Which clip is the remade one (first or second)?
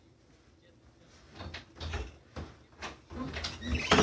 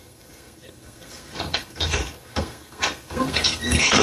second